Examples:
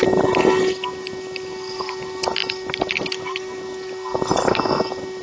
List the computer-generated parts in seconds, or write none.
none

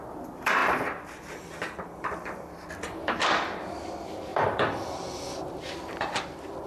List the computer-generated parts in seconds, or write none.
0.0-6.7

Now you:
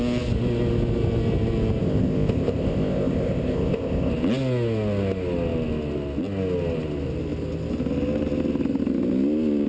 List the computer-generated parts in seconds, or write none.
1.8-4.1

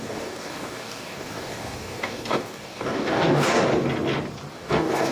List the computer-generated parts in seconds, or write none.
0.0-3.7; 4.5-5.1